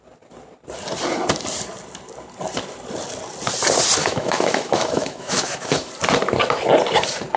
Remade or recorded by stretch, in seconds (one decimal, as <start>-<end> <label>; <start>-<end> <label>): 0.0-4.0 recorded; 4.0-5.9 remade; 5.9-7.4 recorded